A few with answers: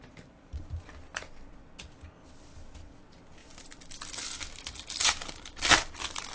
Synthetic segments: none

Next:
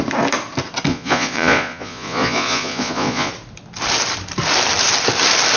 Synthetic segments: 0.9-3.3 (vocoder, Vocos)